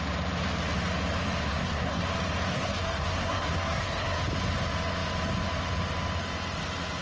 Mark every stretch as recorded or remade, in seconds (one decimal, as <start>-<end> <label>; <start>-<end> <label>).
0.0-1.4 recorded; 1.4-2.0 remade; 2.0-2.5 recorded; 2.5-4.2 remade; 4.2-7.0 recorded